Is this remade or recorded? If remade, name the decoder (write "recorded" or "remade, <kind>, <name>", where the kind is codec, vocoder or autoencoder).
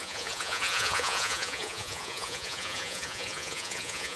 remade, vocoder, Vocos